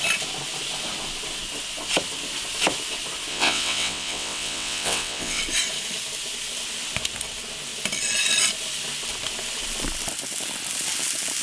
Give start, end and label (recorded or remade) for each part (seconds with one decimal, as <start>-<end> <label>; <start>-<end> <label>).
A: 0.0-3.3 recorded; 3.3-5.4 remade; 5.4-11.4 recorded